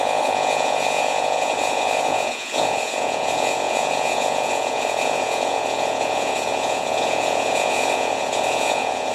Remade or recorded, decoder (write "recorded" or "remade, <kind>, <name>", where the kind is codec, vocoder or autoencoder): remade, vocoder, Vocos